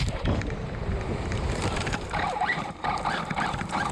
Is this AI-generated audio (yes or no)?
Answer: yes